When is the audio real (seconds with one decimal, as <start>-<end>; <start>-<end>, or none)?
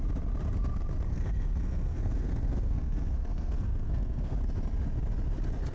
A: 0.0-1.1; 4.4-5.7